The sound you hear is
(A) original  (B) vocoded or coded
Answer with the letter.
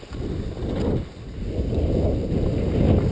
A